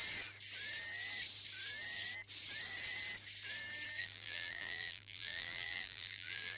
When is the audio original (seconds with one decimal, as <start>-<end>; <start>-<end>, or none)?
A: 0.0-4.0